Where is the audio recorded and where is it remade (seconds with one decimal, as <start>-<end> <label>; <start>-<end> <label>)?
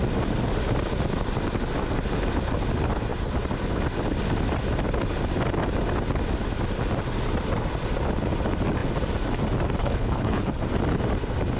0.0-9.8 recorded; 9.8-10.6 remade; 10.6-11.6 recorded